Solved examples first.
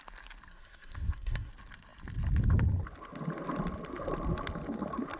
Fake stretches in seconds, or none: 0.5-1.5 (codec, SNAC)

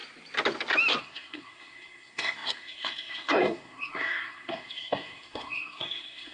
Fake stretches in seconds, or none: 1.0-6.3 (codec, SNAC)

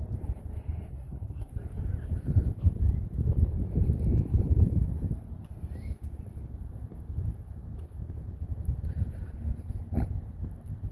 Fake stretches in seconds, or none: 0.9-1.5 (codec, SNAC)

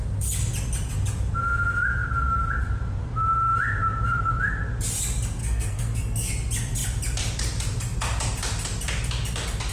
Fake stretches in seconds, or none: 5.4-6.3 (codec, SNAC)

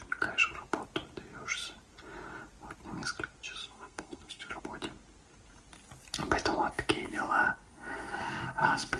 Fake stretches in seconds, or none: 3.6-4.6 (codec, SNAC); 7.7-9.0

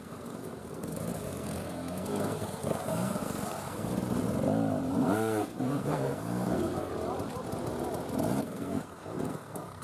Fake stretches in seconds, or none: 0.0-3.9 (codec, SNAC); 4.9-6.9; 8.4-9.8